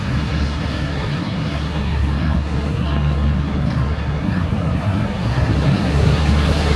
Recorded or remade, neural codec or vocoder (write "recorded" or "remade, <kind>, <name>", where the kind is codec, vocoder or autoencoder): remade, codec, SNAC